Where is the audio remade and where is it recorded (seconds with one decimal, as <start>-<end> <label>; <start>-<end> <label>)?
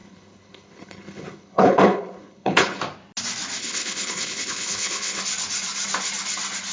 0.0-2.8 remade; 2.8-3.6 recorded; 3.6-5.2 remade; 5.2-6.7 recorded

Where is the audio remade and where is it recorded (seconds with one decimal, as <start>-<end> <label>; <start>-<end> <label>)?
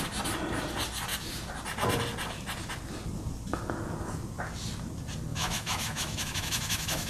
0.0-5.3 recorded; 5.3-7.1 remade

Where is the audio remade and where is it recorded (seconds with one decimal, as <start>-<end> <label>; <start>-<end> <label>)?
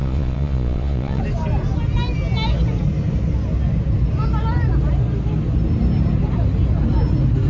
0.0-1.2 remade; 1.2-7.5 recorded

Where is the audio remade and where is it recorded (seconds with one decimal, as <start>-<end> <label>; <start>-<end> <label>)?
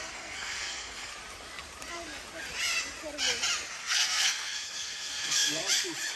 0.0-1.1 remade; 1.1-3.7 recorded; 3.7-5.6 remade; 5.6-6.2 recorded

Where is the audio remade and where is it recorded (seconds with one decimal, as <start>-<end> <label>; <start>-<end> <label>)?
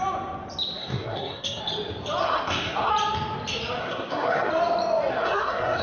0.0-0.8 recorded; 0.8-1.6 remade; 1.6-2.2 recorded; 2.2-2.9 remade; 2.9-3.8 recorded; 3.8-4.5 remade; 4.5-5.1 recorded; 5.1-5.8 remade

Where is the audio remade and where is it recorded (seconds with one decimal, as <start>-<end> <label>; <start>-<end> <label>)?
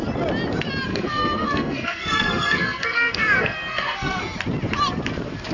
0.0-0.9 recorded; 0.9-4.2 remade; 4.2-5.5 recorded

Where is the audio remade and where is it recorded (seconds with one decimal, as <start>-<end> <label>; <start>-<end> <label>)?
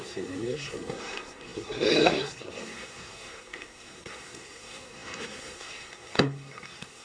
0.0-7.0 remade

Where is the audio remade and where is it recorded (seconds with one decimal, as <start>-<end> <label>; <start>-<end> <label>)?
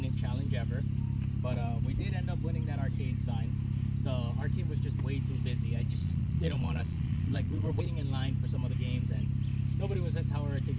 0.0-6.0 recorded; 6.0-7.8 remade; 7.8-10.8 recorded